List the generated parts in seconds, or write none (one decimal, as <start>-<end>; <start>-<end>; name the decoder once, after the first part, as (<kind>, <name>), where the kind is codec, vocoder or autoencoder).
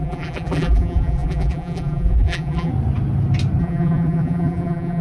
0.0-2.7 (vocoder, BigVGAN v2); 3.6-5.0